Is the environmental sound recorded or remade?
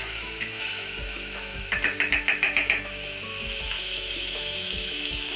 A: remade